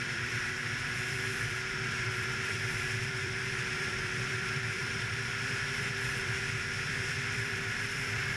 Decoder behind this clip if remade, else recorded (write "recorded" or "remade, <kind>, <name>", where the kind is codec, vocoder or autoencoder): remade, vocoder, BigVGAN v2